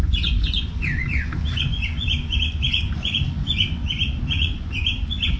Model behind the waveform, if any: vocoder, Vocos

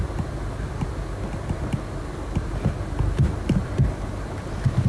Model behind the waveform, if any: none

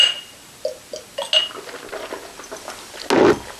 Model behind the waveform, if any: none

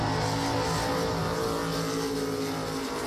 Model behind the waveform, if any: none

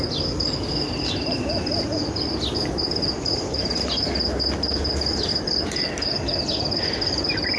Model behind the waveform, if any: none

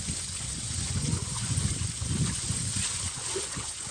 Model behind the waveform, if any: vocoder, Vocos